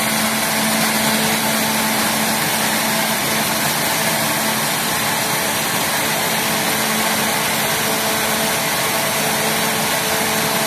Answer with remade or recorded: recorded